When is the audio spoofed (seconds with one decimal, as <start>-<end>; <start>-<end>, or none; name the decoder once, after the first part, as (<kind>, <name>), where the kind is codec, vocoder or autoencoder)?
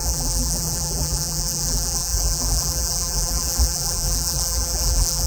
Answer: 0.0-5.3 (vocoder, BigVGAN v2)